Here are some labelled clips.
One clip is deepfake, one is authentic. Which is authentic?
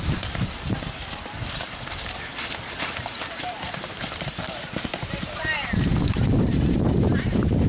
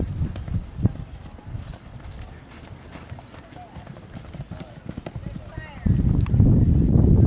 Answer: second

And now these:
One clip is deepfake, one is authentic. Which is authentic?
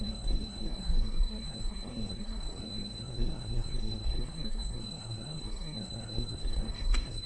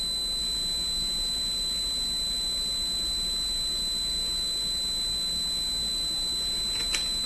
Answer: second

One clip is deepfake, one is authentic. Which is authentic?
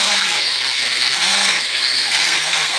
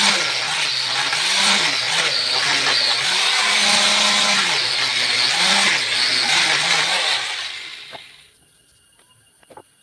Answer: second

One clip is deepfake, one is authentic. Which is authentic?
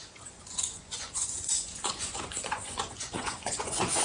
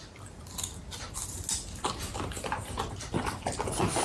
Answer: second